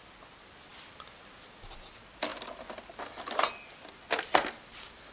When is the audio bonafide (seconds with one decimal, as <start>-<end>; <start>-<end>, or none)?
0.0-5.1